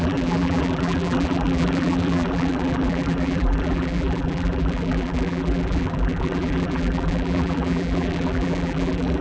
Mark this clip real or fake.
fake